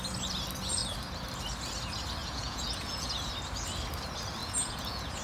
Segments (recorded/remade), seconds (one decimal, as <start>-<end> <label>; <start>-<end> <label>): 0.0-2.2 recorded; 2.2-3.3 remade; 3.3-4.4 recorded; 4.4-5.2 remade